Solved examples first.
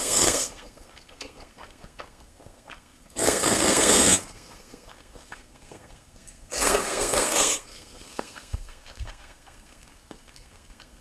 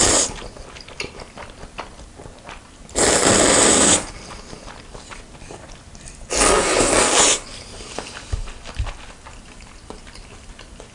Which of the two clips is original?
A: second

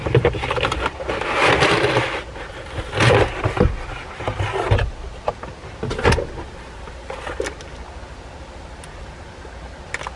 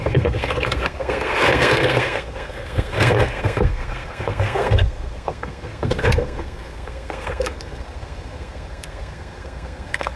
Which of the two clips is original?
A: first